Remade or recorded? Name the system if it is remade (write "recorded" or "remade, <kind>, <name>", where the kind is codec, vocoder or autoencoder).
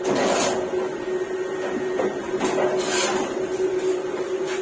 recorded